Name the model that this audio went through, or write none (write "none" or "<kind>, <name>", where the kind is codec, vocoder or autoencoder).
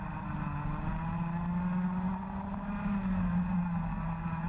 none